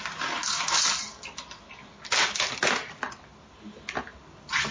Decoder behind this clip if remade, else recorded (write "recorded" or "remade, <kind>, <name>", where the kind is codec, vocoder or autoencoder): recorded